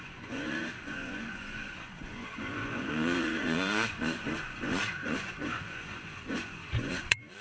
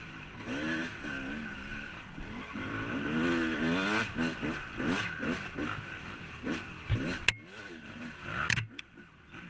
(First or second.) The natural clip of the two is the second